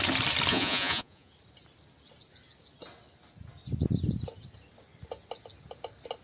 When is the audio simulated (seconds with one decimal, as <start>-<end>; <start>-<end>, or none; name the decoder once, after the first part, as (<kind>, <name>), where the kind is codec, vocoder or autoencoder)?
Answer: 0.5-1.3 (vocoder, Vocos)